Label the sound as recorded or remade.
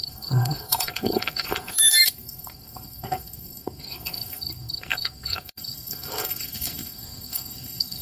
remade